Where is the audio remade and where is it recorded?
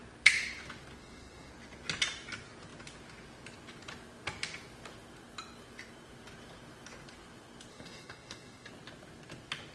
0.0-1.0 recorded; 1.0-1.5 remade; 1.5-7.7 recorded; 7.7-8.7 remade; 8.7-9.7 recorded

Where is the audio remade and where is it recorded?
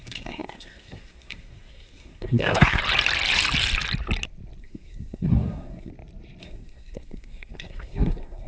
0.0-2.8 remade; 2.8-4.6 recorded; 4.6-5.9 remade; 5.9-6.4 recorded; 6.4-8.5 remade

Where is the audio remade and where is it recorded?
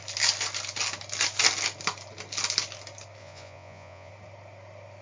0.0-3.2 recorded; 3.2-4.1 remade; 4.1-5.0 recorded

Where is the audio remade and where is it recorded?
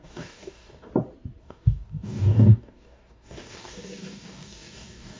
0.0-0.9 remade; 0.9-1.4 recorded; 1.4-5.2 remade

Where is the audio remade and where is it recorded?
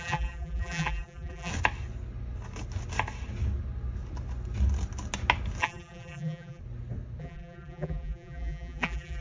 0.0-1.5 remade; 1.5-5.6 recorded; 5.6-6.6 remade; 6.6-7.2 recorded; 7.2-9.2 remade